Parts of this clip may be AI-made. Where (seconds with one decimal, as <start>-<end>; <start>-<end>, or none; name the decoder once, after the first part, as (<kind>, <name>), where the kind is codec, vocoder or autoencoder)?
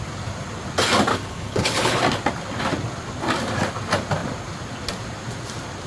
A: 1.1-2.0 (codec, HILCodec)